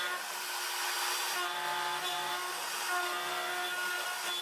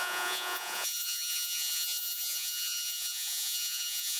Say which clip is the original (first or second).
first